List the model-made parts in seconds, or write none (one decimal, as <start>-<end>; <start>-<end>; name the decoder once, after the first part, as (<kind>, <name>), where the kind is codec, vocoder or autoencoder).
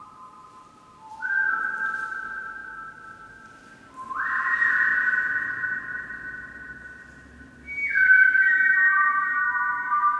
7.8-10.2 (codec, DAC)